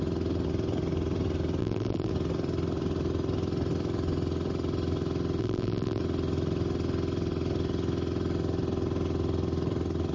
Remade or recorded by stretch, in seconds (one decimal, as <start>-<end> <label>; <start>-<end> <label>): 0.0-1.6 recorded; 1.6-2.1 remade; 2.1-5.4 recorded; 5.4-6.0 remade; 6.0-10.1 recorded